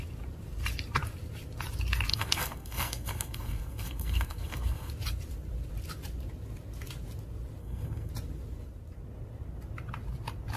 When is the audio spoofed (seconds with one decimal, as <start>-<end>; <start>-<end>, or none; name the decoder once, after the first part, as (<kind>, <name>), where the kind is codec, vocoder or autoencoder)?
2.1-4.9 (codec, SNAC); 7.6-8.1